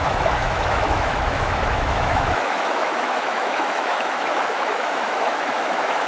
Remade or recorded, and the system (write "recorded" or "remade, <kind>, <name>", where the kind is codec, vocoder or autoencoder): remade, autoencoder, DAC-VAE